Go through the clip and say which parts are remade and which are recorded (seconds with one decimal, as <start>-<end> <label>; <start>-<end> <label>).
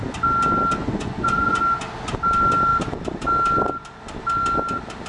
0.0-0.8 recorded; 0.8-1.6 remade; 1.6-5.1 recorded